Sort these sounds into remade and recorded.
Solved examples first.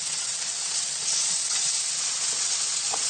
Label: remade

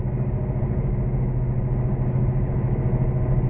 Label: recorded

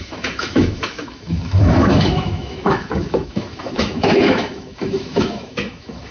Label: remade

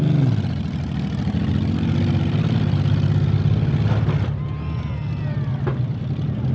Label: recorded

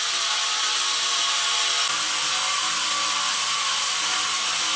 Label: recorded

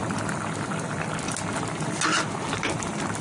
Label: recorded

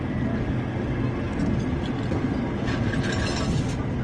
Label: recorded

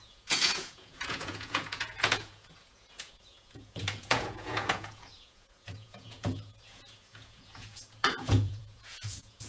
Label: remade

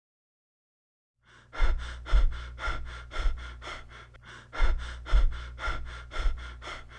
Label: recorded